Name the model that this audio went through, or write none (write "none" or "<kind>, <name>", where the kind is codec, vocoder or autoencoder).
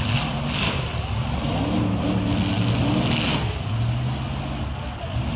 none